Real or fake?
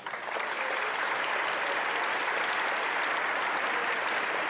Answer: real